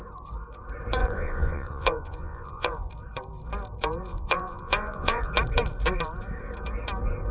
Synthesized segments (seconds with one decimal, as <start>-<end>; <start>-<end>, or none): 1.0-2.9; 4.1-5.3